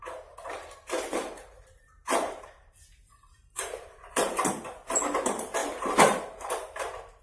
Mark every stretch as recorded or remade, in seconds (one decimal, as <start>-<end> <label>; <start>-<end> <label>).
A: 0.0-4.3 remade; 4.3-5.6 recorded; 5.6-6.5 remade; 6.5-7.2 recorded